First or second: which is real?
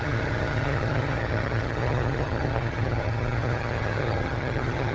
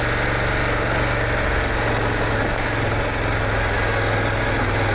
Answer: second